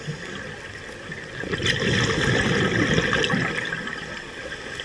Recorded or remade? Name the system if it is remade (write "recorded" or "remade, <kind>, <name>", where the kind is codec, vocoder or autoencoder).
recorded